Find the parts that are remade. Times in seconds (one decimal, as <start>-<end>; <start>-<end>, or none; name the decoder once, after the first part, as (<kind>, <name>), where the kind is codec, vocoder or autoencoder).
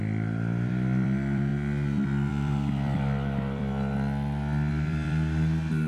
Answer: 0.0-1.5 (vocoder, BigVGAN v2); 2.3-3.6; 4.7-5.9